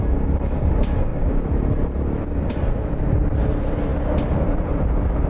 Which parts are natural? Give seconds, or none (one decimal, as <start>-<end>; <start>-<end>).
0.0-1.1; 2.5-5.3